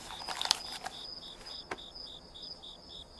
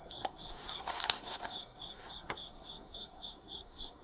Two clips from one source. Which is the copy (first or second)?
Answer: second